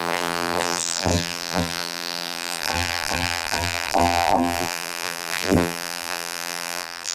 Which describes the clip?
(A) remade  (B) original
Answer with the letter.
A